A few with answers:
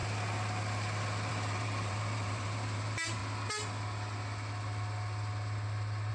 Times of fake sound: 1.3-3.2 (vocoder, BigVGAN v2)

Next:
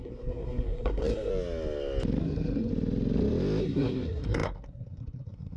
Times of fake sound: 0.0-1.3 (codec, SNAC); 2.2-2.7; 3.6-5.6

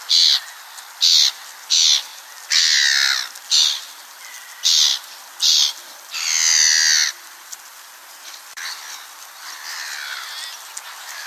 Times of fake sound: none

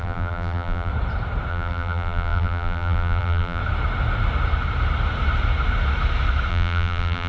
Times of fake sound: 0.0-0.9 (vocoder, BigVGAN v2); 1.5-3.6; 6.5-7.3

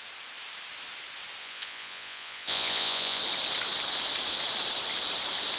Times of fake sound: 1.4-3.2 (vocoder, Vocos)